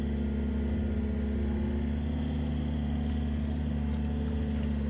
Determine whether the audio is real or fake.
real